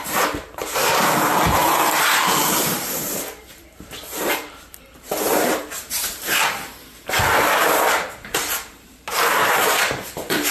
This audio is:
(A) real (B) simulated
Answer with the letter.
B